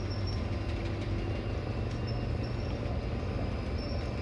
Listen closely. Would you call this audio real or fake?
real